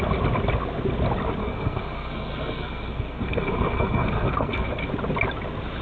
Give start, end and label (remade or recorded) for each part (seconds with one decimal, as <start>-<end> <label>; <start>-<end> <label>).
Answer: 0.0-1.4 recorded; 1.4-4.9 remade; 4.9-5.8 recorded